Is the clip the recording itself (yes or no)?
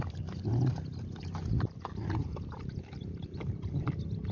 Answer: yes